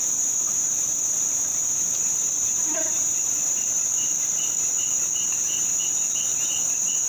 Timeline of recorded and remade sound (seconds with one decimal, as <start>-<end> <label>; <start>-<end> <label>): 0.0-0.4 recorded; 0.4-4.7 remade; 4.7-7.1 recorded